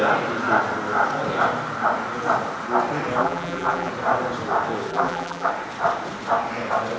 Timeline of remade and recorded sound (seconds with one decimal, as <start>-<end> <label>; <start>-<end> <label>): 0.0-3.2 recorded; 3.2-3.9 remade; 3.9-4.9 recorded; 4.9-5.5 remade; 5.5-7.0 recorded